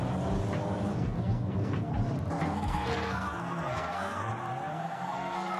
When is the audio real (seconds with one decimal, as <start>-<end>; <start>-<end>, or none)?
0.0-0.9; 1.9-2.4; 4.3-4.7